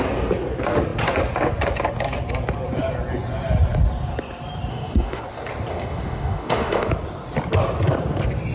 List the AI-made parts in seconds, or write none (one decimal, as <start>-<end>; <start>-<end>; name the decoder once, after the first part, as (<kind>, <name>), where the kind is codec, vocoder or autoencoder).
4.7-5.2 (autoencoder, DAC-VAE); 5.7-6.9